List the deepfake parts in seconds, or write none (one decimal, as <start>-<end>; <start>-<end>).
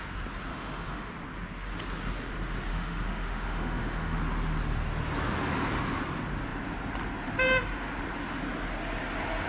0.5-1.1; 2.7-4.2